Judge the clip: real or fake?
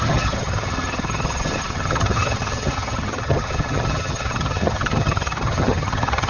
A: fake